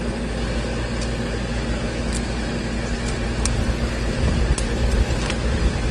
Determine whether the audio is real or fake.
real